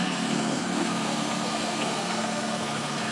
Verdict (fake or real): fake